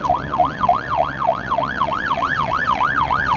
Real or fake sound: fake